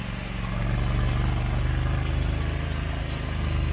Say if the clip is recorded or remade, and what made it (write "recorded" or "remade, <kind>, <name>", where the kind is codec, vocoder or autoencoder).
recorded